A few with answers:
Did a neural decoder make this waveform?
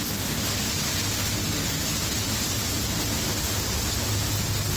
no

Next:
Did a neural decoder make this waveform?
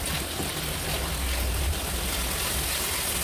no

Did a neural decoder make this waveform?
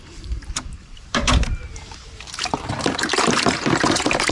yes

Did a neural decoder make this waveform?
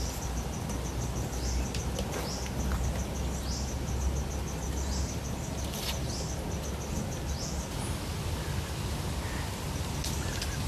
no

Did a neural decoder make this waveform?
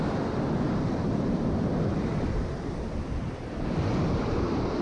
yes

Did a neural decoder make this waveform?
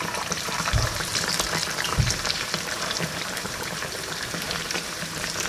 yes